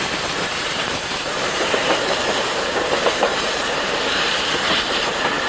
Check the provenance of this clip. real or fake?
fake